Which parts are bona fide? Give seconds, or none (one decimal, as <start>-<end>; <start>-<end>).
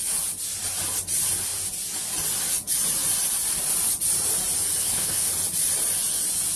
0.0-4.8; 5.3-6.6